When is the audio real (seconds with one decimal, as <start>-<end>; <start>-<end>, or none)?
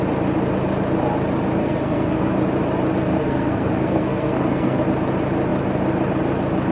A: 0.0-1.6; 2.3-3.1; 4.8-6.7